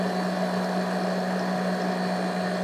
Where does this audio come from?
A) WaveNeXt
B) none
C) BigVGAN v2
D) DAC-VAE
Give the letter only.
B